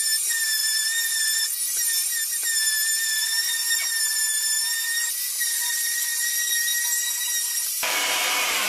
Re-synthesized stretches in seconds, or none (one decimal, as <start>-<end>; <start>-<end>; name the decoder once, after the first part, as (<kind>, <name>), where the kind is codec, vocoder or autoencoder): 0.0-0.6 (vocoder, BigVGAN v2); 4.0-6.7; 7.7-8.7